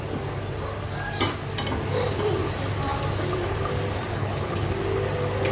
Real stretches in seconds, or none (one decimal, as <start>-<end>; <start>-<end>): 0.0-4.1; 4.7-5.5